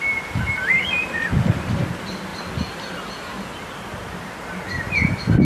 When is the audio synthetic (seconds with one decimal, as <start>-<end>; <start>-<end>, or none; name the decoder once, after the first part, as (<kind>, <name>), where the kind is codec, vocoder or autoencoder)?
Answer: none